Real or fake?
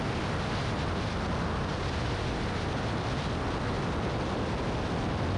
real